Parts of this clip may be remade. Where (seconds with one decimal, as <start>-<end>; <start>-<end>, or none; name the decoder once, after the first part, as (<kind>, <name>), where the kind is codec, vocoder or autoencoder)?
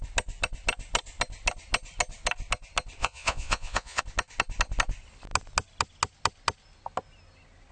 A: 3.0-4.0 (vocoder, Vocos)